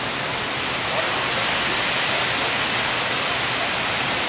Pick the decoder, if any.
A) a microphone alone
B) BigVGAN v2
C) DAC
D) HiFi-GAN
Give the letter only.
A